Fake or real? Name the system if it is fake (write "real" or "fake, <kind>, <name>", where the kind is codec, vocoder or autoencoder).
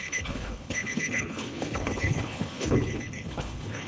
fake, codec, HILCodec